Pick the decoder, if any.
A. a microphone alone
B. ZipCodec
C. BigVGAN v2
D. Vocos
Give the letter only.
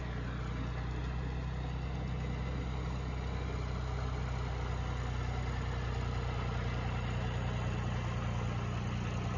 A